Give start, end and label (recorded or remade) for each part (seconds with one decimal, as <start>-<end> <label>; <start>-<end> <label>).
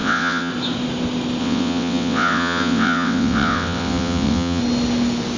0.0-0.5 remade; 0.5-1.4 recorded; 1.4-4.6 remade; 4.6-5.4 recorded